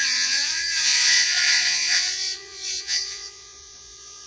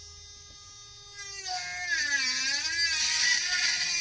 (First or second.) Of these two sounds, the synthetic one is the first